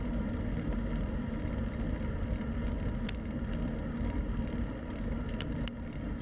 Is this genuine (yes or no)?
yes